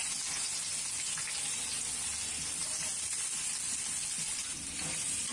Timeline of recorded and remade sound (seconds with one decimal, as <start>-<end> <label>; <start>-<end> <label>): 0.0-2.6 recorded; 2.6-3.2 remade; 3.2-5.3 recorded